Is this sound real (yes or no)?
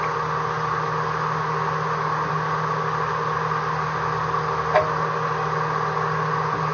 yes